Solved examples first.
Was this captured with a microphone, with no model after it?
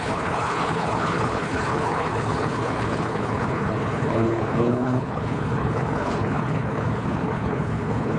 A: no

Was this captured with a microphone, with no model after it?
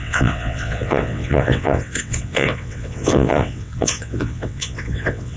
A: no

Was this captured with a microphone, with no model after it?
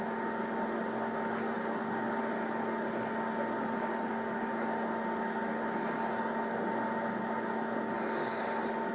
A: yes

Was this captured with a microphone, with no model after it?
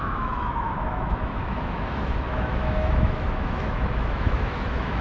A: no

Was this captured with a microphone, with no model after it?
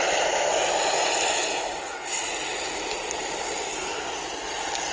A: yes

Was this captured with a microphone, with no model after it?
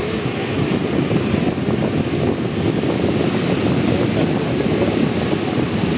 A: yes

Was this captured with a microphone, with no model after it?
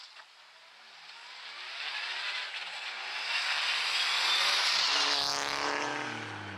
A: yes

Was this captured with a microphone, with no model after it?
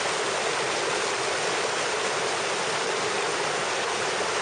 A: yes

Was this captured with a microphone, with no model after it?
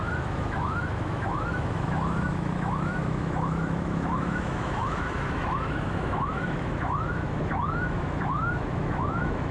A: no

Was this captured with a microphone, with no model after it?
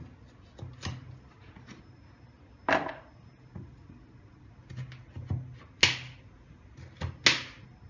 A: yes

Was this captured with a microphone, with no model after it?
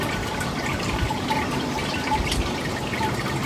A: no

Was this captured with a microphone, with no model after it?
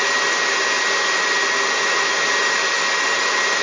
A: yes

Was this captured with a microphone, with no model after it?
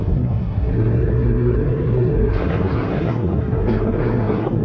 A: no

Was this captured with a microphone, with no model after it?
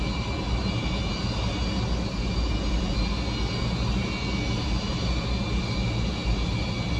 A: yes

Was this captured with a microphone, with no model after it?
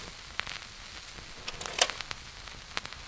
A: yes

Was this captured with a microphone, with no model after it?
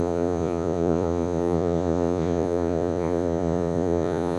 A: no